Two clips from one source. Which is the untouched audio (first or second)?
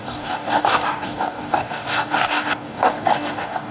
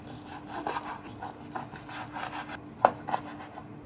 second